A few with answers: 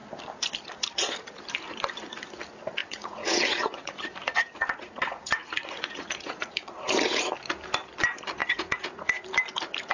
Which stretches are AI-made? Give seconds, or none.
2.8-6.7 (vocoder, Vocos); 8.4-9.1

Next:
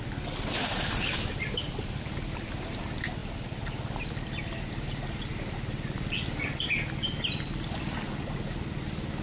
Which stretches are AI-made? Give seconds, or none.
none

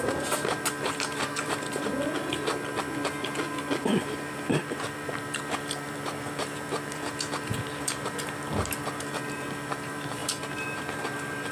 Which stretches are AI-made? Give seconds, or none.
0.0-1.9 (vocoder, BigVGAN v2); 3.8-11.5

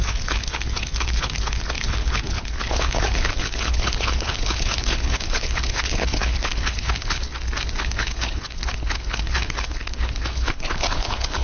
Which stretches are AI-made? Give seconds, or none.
0.0-7.3 (codec, HILCodec); 7.8-11.4

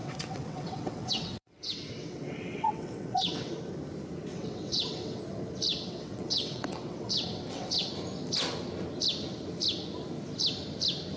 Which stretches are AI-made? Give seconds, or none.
0.0-3.5 (vocoder, WaveNeXt); 4.3-5.2; 5.7-7.9